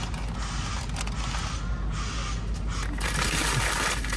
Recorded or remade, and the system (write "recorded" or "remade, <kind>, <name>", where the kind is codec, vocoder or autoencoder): recorded